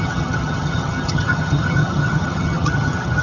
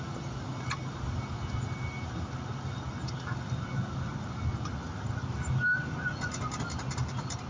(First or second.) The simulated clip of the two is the first